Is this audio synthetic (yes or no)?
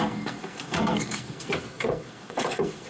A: yes